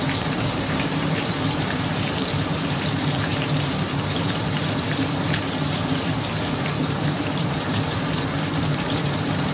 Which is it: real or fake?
fake